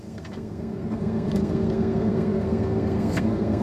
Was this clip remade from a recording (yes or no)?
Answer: yes